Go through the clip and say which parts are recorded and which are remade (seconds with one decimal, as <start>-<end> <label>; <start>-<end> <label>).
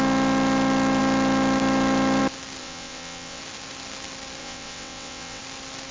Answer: 0.0-2.6 recorded; 2.6-3.4 remade; 3.4-4.4 recorded; 4.4-5.4 remade; 5.4-5.9 recorded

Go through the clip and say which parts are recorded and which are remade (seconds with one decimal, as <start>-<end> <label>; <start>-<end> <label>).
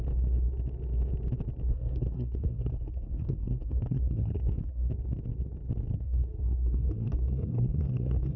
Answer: 0.0-1.7 recorded; 1.7-4.9 remade; 4.9-5.9 recorded; 5.9-8.4 remade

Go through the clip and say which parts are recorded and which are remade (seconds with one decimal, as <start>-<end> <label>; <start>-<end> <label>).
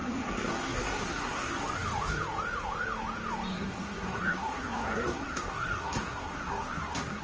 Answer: 0.0-1.6 remade; 1.6-3.5 recorded; 3.5-7.2 remade